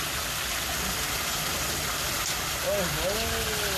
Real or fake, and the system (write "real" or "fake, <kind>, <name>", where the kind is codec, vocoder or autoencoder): real